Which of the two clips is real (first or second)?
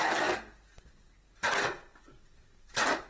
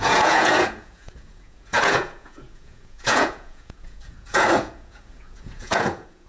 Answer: first